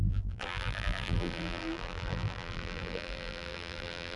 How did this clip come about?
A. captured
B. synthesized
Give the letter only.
B